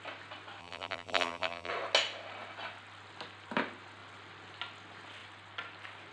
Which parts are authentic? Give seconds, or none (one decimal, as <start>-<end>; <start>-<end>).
0.0-0.6; 1.7-6.1